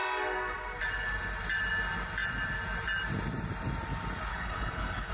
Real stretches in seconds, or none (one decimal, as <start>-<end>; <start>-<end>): 0.0-4.3